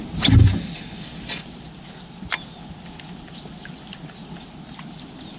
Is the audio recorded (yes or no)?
yes